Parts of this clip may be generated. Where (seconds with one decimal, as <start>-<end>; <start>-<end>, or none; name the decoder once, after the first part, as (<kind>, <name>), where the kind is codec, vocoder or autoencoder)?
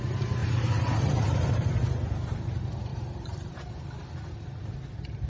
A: 0.4-1.7 (vocoder, BigVGAN v2); 2.9-3.5